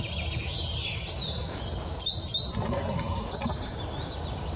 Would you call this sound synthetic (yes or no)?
no